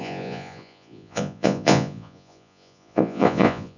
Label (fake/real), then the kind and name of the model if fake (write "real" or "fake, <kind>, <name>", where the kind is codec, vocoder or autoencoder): fake, vocoder, Vocos